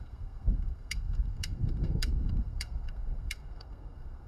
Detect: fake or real fake